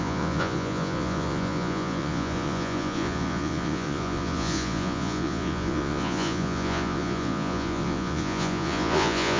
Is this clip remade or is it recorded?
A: remade